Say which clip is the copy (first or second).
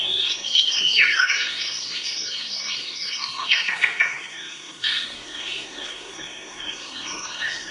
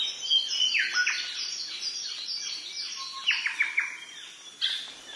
first